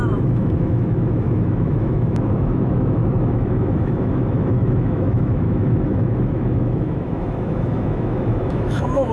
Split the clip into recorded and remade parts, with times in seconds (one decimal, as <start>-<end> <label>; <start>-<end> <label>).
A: 0.0-9.1 remade